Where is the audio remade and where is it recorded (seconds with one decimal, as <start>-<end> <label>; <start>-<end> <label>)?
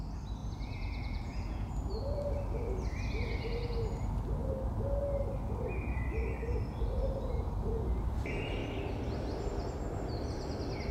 0.0-0.4 recorded; 0.4-1.7 remade; 1.7-10.9 recorded